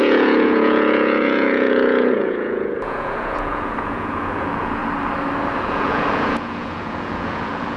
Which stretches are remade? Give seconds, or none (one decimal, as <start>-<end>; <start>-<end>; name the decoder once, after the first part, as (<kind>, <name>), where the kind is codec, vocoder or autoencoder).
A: 0.0-4.8 (vocoder, Vocos); 5.5-7.8